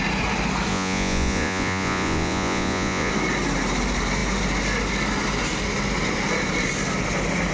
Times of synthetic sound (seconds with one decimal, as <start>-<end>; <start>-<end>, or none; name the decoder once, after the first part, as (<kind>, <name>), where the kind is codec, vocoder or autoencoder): 0.7-3.1 (vocoder, Vocos)

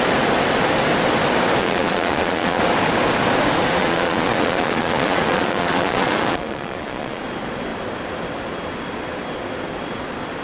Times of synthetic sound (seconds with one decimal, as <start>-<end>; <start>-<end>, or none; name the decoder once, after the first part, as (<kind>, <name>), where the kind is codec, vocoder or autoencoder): 1.6-2.6 (vocoder, Vocos); 3.8-7.2

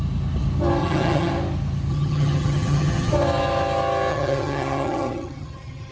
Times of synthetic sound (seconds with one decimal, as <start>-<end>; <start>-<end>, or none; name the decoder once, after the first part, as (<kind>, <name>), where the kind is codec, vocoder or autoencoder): 0.8-1.3 (vocoder, HiFi-GAN); 1.9-3.1; 4.1-5.9

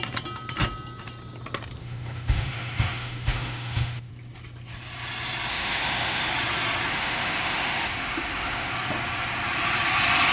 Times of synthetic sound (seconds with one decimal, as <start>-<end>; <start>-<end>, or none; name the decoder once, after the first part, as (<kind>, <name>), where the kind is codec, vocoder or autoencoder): 1.8-4.1 (autoencoder, DAC-VAE); 5.5-6.3; 6.9-8.7

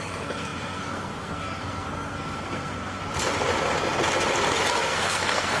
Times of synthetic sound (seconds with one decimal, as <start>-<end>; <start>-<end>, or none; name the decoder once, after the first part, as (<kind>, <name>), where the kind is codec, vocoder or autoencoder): 0.0-3.0 (codec, SNAC); 4.7-5.6